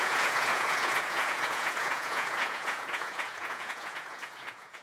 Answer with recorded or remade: remade